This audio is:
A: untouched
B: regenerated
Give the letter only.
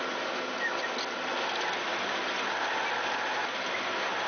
A